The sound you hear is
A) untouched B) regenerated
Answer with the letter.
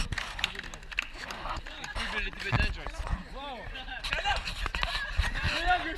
A